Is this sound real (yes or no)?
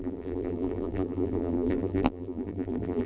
no